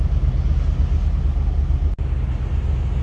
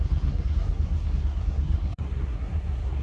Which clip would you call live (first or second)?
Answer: first